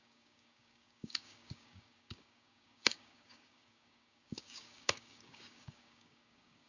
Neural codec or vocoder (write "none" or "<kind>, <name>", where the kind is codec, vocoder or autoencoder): codec, DAC